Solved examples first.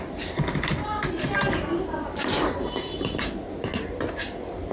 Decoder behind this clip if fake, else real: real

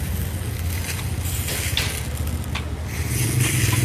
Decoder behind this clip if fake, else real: real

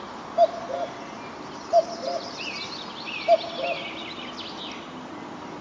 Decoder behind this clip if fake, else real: real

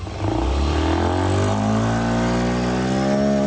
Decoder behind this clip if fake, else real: real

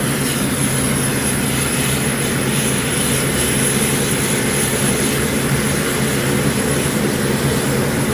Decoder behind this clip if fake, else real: real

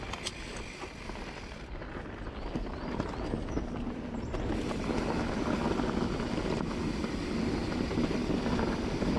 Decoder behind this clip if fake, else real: real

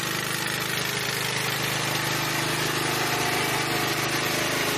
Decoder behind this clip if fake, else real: real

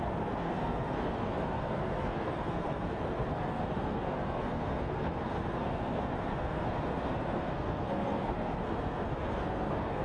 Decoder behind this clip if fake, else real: fake, codec, SNAC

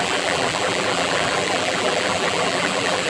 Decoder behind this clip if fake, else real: fake, vocoder, BigVGAN v2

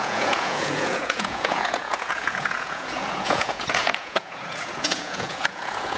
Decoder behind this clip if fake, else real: fake, vocoder, Vocos